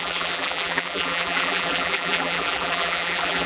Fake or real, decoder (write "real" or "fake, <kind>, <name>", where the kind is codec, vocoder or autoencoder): fake, vocoder, BigVGAN v2